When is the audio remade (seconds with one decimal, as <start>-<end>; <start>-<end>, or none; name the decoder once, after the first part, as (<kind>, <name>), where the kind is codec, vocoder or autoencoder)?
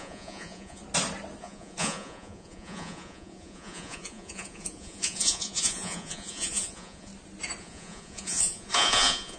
0.0-0.8 (vocoder, Vocos); 1.4-7.1; 7.6-9.4